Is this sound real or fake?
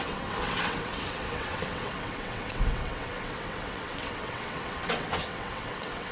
fake